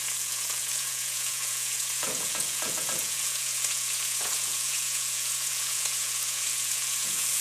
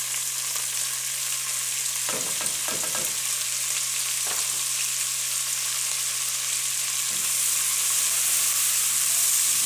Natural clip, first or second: second